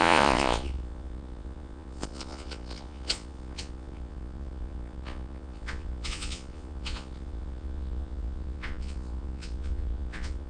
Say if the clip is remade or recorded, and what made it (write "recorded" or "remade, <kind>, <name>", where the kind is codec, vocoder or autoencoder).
remade, vocoder, Vocos